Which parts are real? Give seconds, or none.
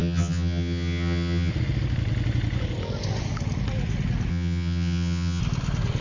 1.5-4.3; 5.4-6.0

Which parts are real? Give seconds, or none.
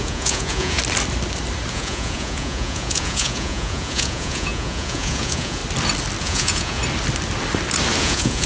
0.8-1.7; 5.6-6.2; 6.8-8.0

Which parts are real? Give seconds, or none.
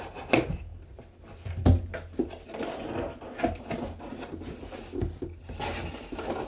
0.0-6.5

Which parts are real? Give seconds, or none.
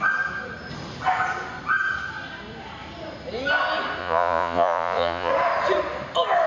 0.0-4.0; 5.3-6.5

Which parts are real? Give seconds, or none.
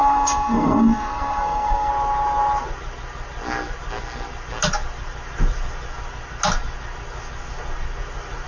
1.9-8.5